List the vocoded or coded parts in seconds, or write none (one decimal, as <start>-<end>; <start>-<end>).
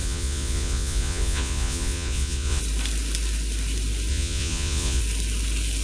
0.0-2.6; 4.1-5.0